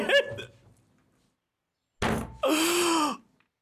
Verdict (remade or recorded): recorded